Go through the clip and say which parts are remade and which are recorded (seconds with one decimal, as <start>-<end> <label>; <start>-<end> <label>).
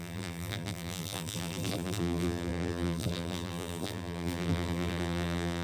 0.0-5.6 remade